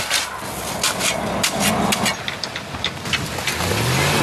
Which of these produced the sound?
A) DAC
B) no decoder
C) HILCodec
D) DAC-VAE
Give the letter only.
B